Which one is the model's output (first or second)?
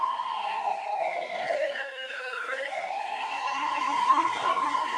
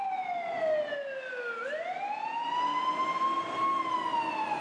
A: first